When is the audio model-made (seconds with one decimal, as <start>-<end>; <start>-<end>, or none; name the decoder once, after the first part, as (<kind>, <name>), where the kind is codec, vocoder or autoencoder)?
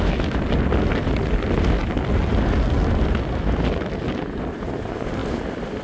none